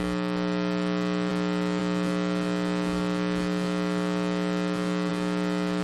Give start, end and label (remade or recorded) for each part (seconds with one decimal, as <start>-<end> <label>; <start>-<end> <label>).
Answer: 0.0-5.8 recorded